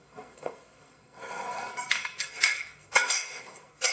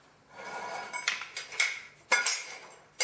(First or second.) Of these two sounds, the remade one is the first